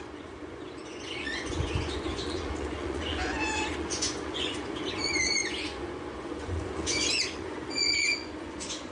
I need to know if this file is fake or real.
fake